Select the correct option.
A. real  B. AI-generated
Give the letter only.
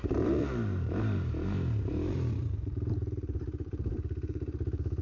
B